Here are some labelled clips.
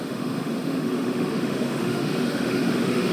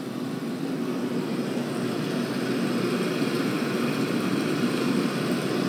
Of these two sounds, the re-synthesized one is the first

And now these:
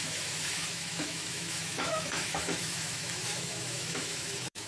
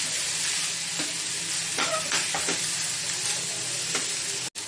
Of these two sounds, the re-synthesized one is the first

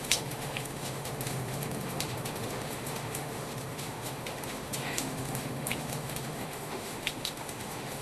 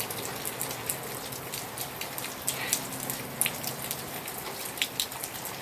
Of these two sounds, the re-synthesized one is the first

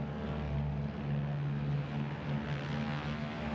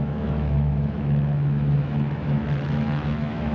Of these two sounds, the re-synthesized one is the second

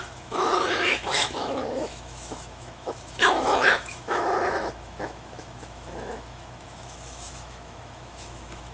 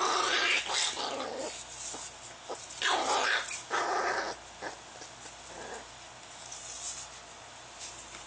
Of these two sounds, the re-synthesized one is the first